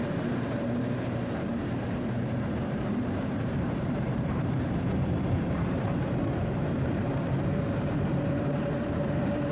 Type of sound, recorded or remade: remade